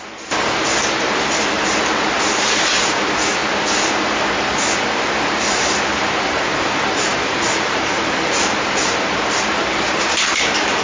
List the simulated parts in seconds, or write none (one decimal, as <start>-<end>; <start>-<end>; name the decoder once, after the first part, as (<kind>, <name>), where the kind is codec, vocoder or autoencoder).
0.0-3.4 (vocoder, BigVGAN v2); 4.9-10.8